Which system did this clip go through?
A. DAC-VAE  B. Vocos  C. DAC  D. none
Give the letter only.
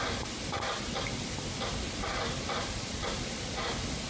D